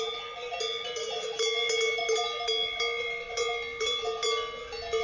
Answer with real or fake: real